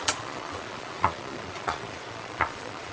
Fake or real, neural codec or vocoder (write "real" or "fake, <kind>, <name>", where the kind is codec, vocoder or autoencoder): fake, vocoder, Vocos